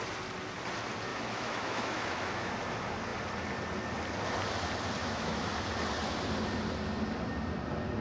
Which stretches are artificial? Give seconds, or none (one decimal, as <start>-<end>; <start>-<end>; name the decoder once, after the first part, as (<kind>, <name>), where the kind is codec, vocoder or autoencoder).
1.1-2.5 (autoencoder, DAC-VAE); 5.0-5.5